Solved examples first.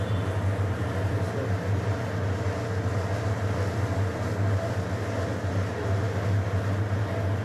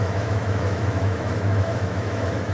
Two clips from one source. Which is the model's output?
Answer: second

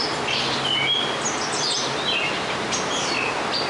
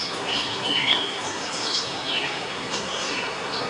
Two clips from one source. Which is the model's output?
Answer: second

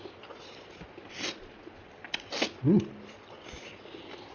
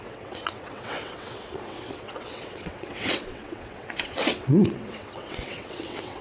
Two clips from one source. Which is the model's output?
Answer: second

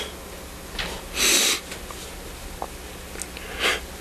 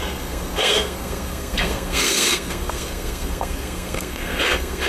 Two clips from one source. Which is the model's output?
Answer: second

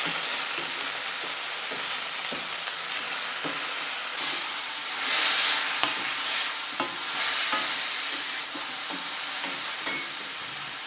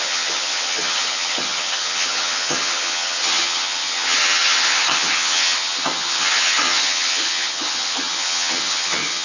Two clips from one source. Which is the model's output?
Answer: second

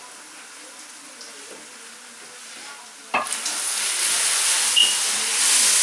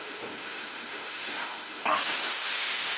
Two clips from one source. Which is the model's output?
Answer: second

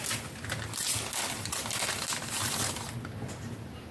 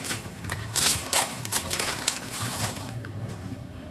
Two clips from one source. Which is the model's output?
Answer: second